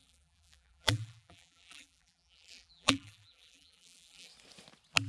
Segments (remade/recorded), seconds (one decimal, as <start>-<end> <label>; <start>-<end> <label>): 0.0-4.3 remade; 4.3-5.1 recorded